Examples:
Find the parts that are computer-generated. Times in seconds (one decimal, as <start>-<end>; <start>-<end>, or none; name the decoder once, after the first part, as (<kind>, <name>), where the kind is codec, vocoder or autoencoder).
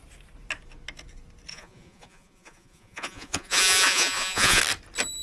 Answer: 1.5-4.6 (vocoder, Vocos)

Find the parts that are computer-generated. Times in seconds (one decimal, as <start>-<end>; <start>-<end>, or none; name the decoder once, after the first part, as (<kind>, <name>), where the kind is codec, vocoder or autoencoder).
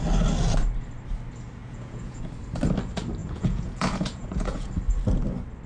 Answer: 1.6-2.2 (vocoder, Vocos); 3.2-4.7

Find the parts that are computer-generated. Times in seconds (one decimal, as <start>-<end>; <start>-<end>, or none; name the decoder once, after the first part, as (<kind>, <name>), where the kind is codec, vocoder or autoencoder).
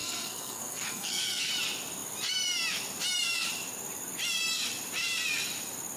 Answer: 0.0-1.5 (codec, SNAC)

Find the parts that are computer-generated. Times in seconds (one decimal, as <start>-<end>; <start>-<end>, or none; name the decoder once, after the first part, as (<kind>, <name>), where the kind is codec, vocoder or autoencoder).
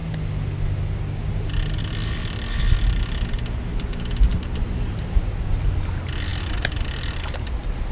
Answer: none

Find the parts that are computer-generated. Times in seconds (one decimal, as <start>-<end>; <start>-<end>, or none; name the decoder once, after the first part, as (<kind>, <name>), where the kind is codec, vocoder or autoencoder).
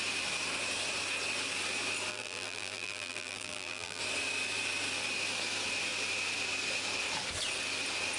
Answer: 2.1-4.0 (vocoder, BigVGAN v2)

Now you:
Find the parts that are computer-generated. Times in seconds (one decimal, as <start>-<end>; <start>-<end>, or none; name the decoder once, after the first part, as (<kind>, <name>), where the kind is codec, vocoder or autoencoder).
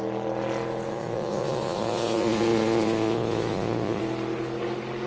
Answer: 0.9-4.0 (vocoder, Vocos)